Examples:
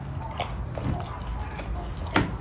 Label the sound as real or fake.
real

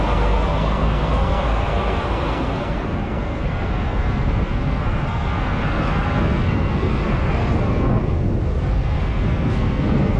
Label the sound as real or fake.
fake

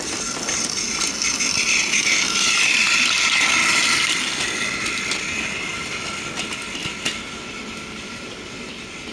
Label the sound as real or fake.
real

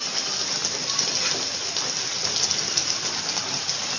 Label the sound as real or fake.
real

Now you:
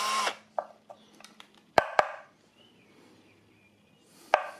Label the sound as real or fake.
fake